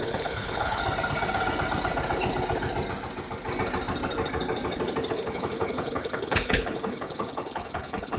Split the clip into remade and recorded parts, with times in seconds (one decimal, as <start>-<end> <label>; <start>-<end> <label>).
0.0-0.8 remade; 0.8-5.1 recorded; 5.1-8.2 remade